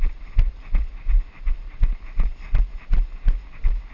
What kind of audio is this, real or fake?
real